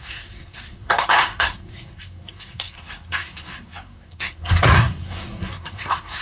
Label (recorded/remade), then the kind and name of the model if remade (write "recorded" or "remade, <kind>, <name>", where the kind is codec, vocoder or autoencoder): remade, codec, SNAC